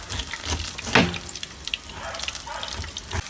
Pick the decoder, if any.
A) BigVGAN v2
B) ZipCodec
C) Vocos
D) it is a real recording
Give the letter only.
D